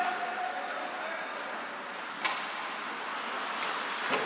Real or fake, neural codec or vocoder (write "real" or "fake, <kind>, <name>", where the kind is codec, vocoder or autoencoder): real